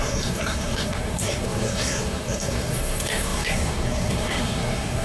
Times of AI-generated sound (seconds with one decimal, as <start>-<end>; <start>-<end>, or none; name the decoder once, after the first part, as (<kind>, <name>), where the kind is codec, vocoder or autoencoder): 0.0-5.0 (codec, SNAC)